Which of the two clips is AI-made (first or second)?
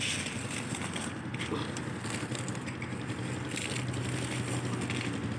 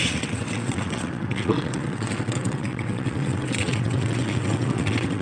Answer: second